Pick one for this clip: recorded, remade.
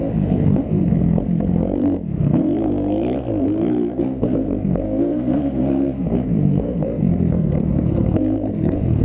remade